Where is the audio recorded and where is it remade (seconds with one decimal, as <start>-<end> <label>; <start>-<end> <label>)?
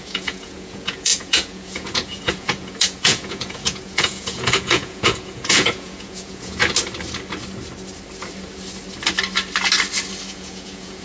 0.0-6.6 remade; 6.6-10.3 recorded; 10.3-11.0 remade